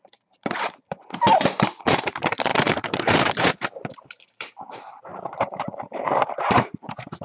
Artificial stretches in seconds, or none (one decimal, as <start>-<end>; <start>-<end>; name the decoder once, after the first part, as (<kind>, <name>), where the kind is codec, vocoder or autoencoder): 0.0-7.2 (vocoder, BigVGAN v2)